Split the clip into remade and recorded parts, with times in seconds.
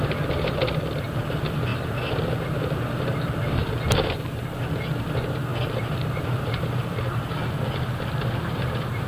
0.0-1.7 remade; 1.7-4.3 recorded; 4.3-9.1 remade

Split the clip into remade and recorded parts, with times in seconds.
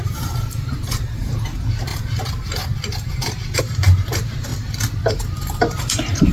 0.0-4.5 remade; 4.5-5.1 recorded; 5.1-6.3 remade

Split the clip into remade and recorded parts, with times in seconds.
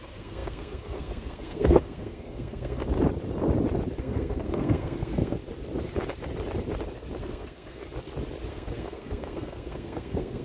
0.0-2.8 remade; 2.8-4.0 recorded; 4.0-5.4 remade; 5.4-7.2 recorded; 7.2-7.8 remade; 7.8-8.5 recorded; 8.5-10.4 remade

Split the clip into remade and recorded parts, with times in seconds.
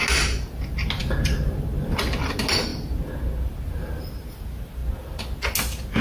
0.0-6.0 recorded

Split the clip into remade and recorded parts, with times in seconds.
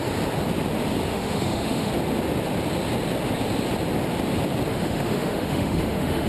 0.0-1.1 recorded; 1.1-1.9 remade; 1.9-4.7 recorded; 4.7-6.3 remade